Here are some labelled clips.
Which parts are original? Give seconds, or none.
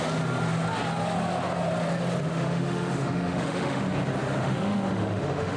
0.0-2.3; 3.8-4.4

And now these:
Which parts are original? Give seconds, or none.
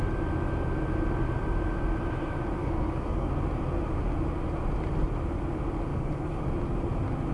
0.0-2.6; 3.3-5.9; 6.4-7.3